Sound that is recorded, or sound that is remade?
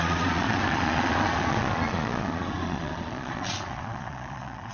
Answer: remade